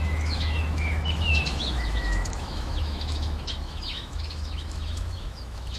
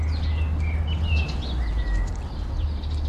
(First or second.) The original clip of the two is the second